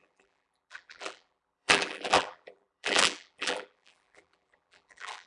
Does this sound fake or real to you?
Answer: fake